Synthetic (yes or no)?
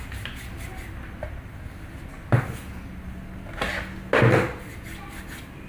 no